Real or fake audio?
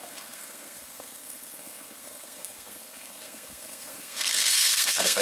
fake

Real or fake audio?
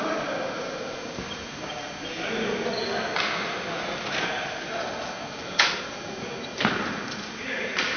real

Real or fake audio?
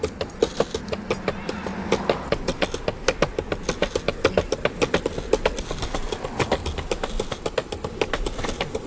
real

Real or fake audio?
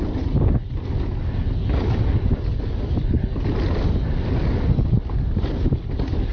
real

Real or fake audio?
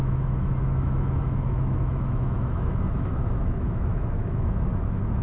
fake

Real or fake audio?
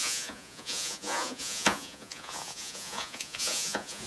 fake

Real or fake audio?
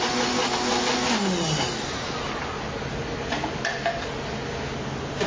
real